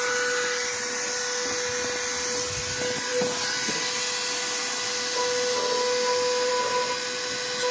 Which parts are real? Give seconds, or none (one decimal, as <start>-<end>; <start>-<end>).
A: 0.0-7.7